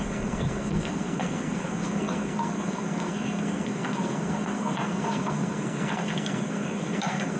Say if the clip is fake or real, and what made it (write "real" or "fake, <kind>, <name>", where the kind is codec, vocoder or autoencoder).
fake, codec, SNAC